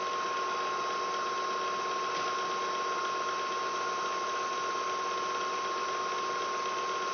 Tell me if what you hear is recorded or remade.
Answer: recorded